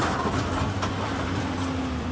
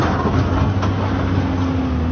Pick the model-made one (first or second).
first